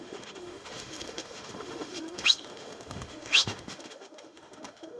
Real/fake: fake